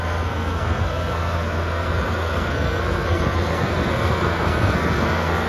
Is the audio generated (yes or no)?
yes